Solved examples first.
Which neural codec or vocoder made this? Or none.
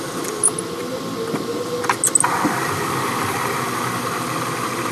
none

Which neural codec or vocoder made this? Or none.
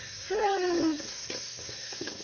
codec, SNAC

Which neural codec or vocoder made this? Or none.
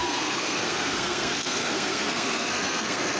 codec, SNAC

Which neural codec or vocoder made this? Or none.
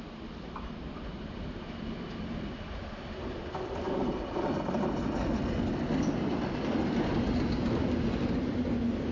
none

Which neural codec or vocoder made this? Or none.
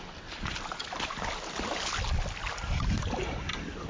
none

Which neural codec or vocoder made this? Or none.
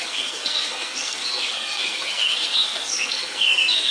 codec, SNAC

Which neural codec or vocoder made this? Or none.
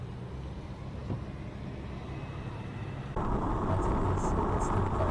none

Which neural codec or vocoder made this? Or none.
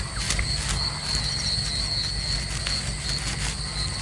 none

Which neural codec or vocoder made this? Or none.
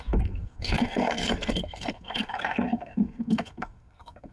codec, SNAC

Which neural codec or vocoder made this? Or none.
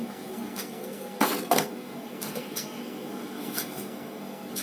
codec, SNAC